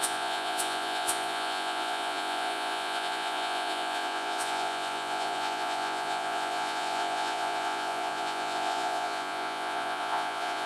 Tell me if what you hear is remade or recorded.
remade